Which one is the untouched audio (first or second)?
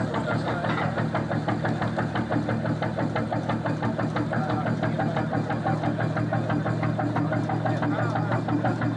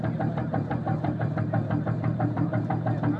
first